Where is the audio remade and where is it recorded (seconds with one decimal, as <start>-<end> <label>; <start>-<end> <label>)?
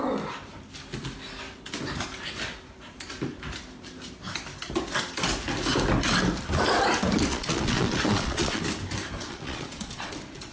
0.0-7.3 recorded; 7.3-8.6 remade; 8.6-9.2 recorded; 9.2-10.1 remade; 10.1-10.5 recorded